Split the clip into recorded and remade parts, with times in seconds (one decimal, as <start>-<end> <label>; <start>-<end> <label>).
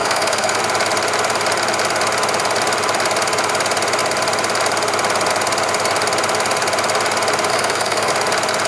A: 0.0-0.6 remade; 0.6-7.5 recorded; 7.5-8.1 remade; 8.1-8.7 recorded